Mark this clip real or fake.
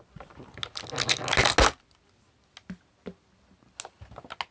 real